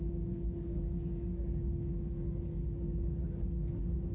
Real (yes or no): no